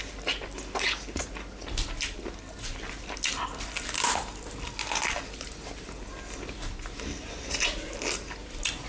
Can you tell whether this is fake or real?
real